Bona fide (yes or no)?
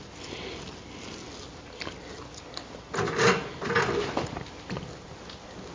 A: yes